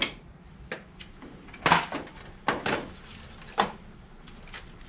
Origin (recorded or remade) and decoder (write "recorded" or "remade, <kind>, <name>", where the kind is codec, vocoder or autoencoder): recorded